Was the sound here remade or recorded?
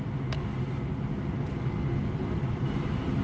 recorded